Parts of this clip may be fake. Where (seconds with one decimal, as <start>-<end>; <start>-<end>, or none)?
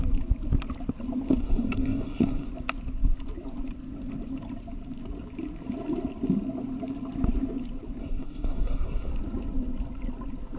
1.4-2.5; 8.0-9.1